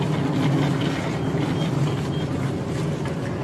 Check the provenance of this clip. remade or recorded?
recorded